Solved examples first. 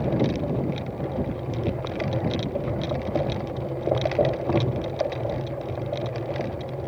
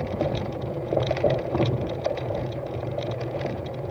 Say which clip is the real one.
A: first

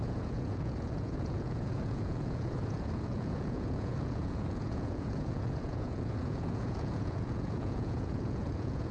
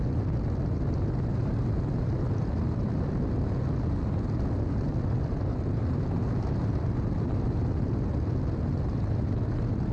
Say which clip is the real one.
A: second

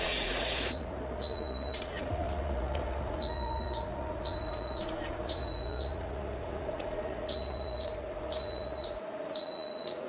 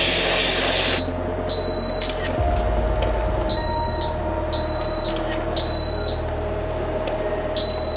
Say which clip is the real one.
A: second